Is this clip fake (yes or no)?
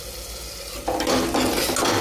no